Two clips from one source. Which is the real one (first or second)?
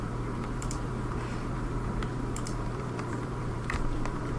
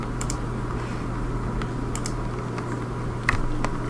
second